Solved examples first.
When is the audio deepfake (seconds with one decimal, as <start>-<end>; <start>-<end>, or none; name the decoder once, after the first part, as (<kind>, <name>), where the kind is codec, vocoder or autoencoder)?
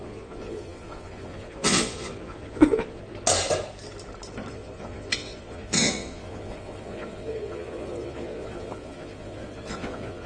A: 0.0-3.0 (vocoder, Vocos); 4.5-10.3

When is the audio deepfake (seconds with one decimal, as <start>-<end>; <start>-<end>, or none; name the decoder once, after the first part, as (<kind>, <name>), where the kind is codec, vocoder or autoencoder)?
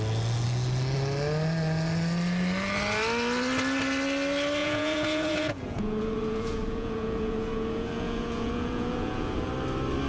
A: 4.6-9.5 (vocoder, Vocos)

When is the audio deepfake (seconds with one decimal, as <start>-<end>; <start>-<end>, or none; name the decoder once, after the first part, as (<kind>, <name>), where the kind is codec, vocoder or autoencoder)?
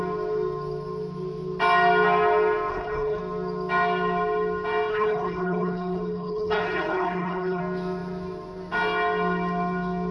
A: 2.7-3.2 (codec, HILCodec); 4.9-7.6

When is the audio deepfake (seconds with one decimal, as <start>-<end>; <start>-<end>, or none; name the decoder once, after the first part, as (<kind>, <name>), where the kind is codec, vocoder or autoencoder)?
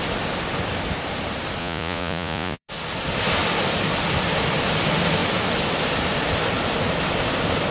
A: 1.6-2.7 (vocoder, Vocos)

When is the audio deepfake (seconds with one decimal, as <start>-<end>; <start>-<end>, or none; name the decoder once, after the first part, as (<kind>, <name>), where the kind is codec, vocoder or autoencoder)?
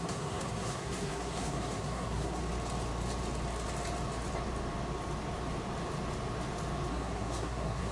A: 0.0-2.4 (codec, SNAC); 6.9-7.9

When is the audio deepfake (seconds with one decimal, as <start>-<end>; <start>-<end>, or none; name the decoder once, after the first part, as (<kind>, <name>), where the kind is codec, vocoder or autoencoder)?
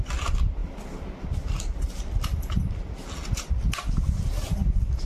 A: none